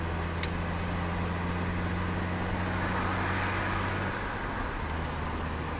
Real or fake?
real